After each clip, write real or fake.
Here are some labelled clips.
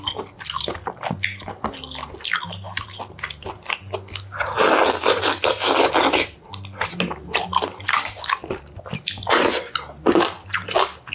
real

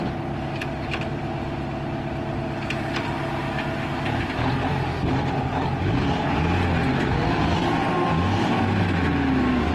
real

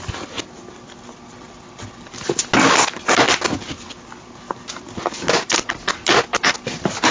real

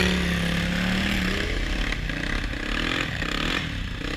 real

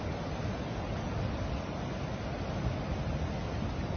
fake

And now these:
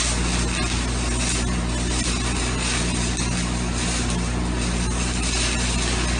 real